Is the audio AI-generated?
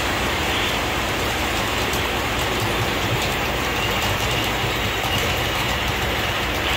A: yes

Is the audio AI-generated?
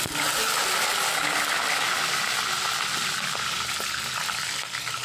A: yes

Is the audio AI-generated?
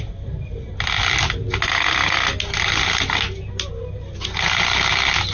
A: no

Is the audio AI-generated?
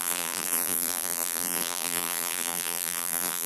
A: yes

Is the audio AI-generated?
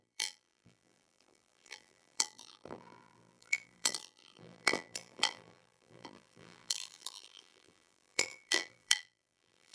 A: yes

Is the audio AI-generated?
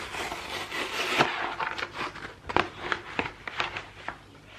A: no